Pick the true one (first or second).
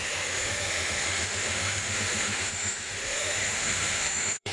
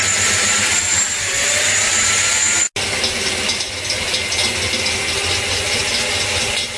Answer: second